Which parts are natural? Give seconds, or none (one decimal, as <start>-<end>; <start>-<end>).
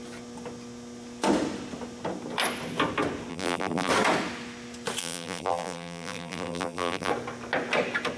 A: 0.0-3.3; 3.9-5.0; 7.1-8.2